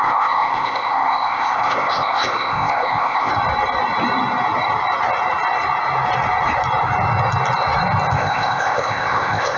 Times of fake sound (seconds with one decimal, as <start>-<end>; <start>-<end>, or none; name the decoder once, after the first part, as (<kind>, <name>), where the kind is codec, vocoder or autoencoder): 0.0-3.3 (codec, ZipCodec); 8.1-9.6